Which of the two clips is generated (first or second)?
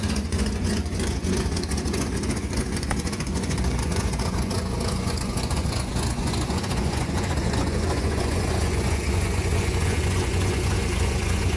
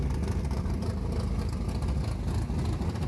first